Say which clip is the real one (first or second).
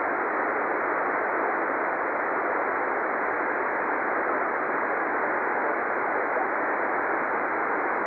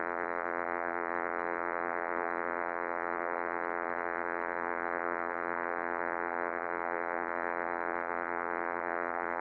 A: first